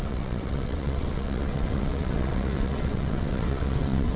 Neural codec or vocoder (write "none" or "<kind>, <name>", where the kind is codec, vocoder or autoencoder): vocoder, WaveNeXt